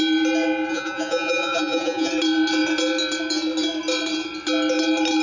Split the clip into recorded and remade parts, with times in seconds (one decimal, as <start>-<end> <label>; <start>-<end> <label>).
0.0-0.7 recorded; 0.7-2.1 remade; 2.1-5.2 recorded